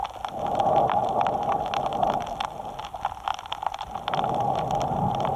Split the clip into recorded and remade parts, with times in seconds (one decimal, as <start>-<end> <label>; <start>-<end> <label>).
0.0-5.4 recorded